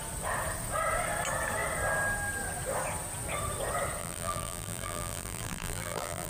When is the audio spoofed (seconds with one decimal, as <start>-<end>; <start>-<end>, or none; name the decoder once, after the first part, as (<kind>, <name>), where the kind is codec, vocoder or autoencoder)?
4.0-6.3 (vocoder, BigVGAN v2)